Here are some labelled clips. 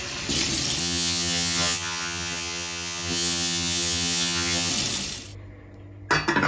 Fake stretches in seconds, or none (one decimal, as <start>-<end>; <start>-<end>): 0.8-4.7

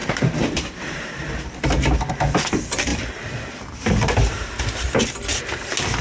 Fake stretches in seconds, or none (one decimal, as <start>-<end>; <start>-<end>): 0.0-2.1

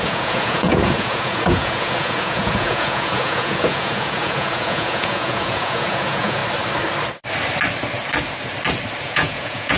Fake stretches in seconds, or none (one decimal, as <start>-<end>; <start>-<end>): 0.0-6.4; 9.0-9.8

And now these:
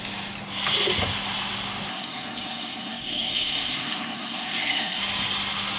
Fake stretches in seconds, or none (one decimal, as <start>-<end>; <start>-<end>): 1.9-5.0

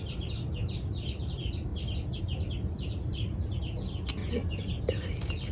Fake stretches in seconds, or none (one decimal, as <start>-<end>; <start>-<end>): 4.2-4.8

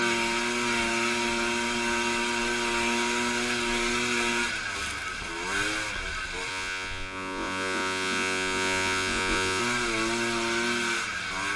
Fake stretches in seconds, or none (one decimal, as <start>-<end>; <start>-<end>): 6.5-9.6